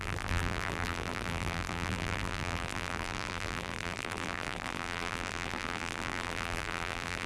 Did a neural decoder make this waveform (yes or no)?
yes